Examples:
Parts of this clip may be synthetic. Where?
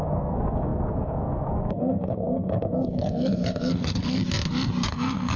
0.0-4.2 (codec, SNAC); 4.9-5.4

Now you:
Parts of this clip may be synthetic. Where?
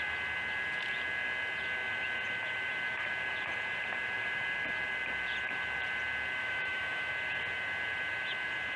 6.4-7.1 (autoencoder, DAC-VAE)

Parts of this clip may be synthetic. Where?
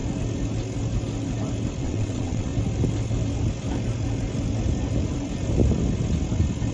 1.8-2.5 (vocoder, WaveNeXt)